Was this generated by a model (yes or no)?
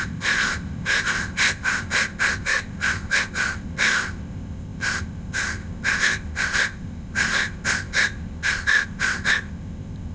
yes